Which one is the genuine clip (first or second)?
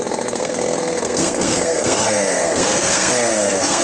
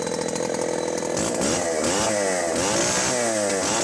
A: second